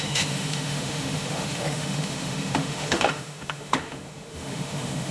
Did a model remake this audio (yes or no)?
yes